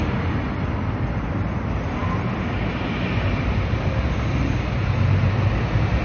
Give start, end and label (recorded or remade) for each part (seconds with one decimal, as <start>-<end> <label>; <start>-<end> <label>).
0.0-6.0 recorded